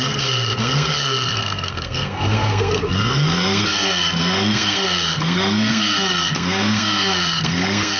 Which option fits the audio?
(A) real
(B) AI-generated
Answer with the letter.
B